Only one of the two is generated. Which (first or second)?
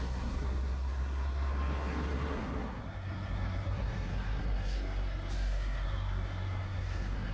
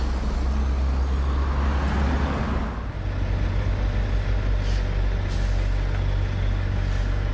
first